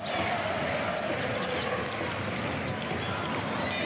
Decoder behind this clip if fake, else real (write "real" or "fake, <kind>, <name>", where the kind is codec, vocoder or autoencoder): real